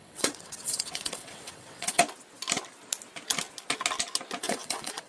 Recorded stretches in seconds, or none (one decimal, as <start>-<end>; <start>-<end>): 2.0-4.4